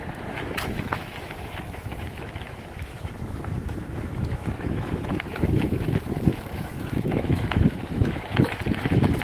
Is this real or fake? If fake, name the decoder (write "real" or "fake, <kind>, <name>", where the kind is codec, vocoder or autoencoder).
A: fake, autoencoder, DAC-VAE